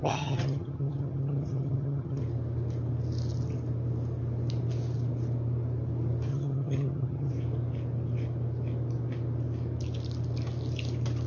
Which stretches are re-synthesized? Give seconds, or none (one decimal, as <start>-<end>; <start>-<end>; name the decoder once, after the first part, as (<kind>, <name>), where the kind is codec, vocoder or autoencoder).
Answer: 0.0-2.2 (vocoder, HiFi-GAN); 6.3-7.3